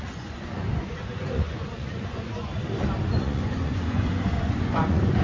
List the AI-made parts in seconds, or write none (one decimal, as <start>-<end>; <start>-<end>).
0.0-2.5; 3.2-5.2